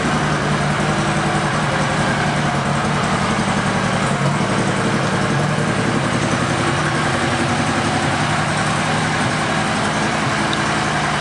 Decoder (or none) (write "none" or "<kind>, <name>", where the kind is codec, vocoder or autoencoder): none